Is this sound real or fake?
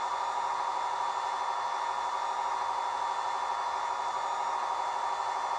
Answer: real